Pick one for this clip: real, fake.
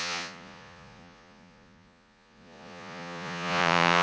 fake